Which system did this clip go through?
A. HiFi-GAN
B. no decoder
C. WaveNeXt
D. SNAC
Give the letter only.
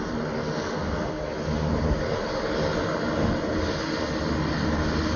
B